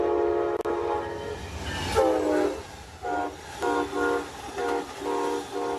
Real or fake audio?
real